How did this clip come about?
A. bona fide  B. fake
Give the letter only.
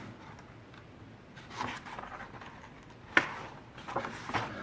A